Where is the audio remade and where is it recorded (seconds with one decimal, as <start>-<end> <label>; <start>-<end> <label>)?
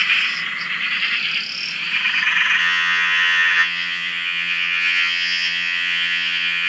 0.0-2.6 recorded; 2.6-6.7 remade